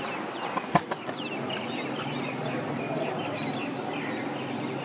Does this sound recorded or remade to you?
recorded